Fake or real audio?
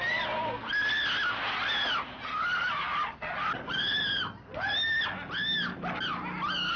real